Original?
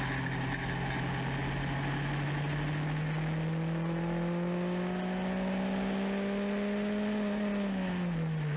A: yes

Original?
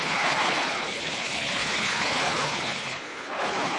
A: no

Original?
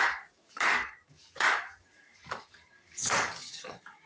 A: no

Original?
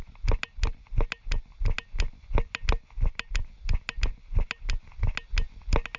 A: yes